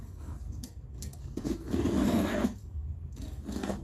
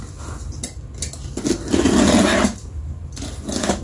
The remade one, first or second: first